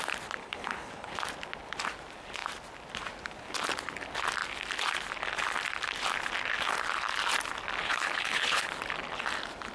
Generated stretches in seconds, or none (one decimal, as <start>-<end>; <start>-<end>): 0.4-1.1; 7.8-8.7